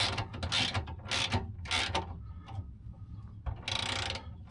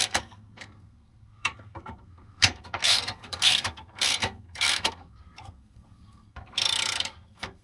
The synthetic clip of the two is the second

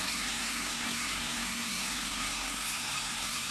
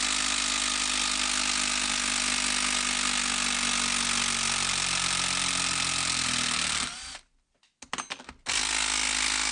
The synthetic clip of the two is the first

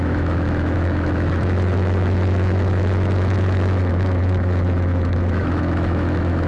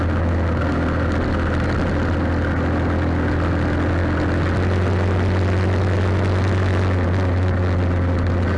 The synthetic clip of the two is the first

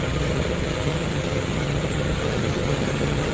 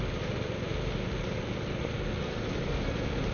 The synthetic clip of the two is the first